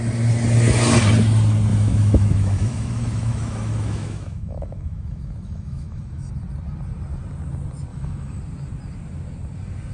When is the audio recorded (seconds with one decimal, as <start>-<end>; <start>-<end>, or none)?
0.0-1.7; 6.3-7.9; 8.4-9.9